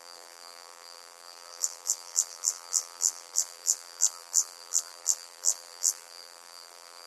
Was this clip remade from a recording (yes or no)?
yes